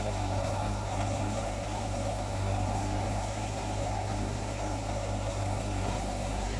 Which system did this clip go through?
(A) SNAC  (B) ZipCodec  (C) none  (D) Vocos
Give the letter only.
A